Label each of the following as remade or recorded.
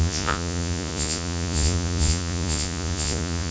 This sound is remade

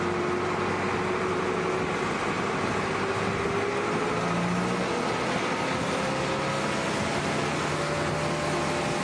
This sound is recorded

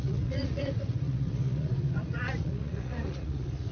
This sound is remade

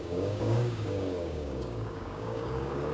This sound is remade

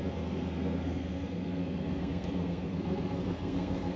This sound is remade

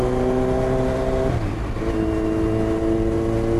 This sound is recorded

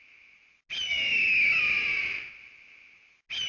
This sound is recorded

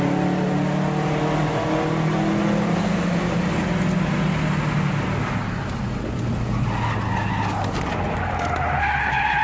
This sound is recorded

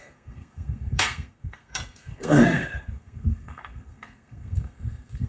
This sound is remade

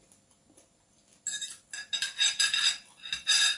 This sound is recorded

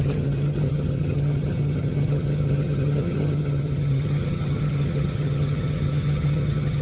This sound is remade